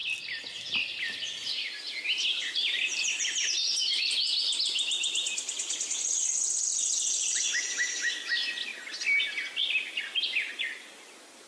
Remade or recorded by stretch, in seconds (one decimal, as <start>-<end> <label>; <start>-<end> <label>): 0.0-4.4 remade; 4.4-6.7 recorded; 6.7-7.5 remade; 7.5-11.5 recorded